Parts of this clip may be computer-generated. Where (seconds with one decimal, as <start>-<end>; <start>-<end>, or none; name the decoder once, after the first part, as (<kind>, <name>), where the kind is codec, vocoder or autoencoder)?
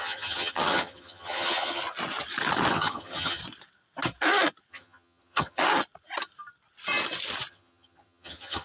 0.0-1.8 (vocoder, HiFi-GAN); 2.7-3.4; 4.7-5.6; 7.5-8.6